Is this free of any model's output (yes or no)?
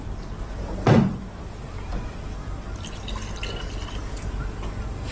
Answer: yes